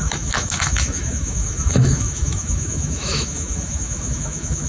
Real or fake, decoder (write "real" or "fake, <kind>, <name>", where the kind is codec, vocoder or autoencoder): fake, autoencoder, DAC-VAE